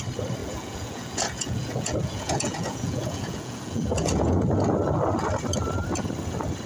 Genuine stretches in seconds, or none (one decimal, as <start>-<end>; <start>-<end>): 0.0-0.4; 4.4-6.7